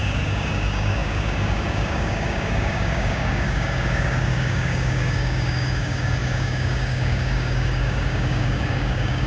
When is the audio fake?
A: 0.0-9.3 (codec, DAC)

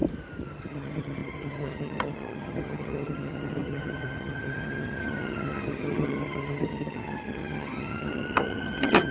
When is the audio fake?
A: 0.6-9.1 (vocoder, HiFi-GAN)

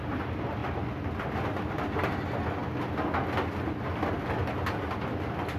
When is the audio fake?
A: none

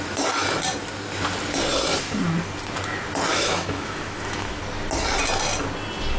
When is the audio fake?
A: 3.3-4.6 (autoencoder, DAC-VAE)

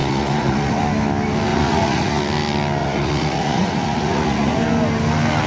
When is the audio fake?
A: 0.0-0.8 (vocoder, Vocos); 1.5-2.2; 2.8-4.6

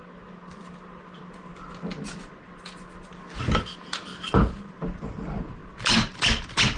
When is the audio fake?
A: none